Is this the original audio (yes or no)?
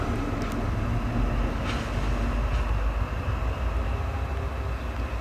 yes